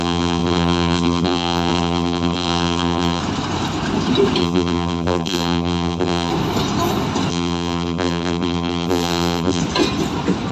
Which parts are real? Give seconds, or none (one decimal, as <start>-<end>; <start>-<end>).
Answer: 3.2-4.4; 6.3-7.3; 9.6-10.5